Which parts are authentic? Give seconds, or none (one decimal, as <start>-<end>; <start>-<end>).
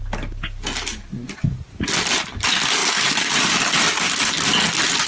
0.0-5.1